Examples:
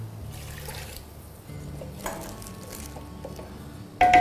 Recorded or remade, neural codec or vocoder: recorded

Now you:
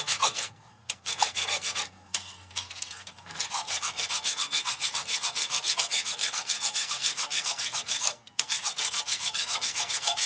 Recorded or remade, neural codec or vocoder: remade, codec, SNAC